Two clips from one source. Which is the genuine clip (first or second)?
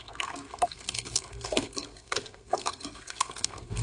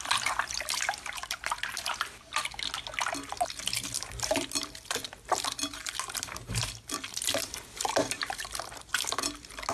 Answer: second